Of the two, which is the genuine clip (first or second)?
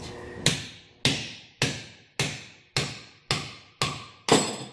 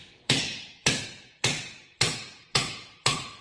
first